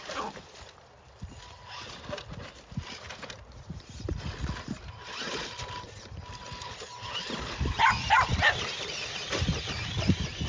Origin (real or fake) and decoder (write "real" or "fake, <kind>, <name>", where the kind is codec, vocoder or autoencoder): real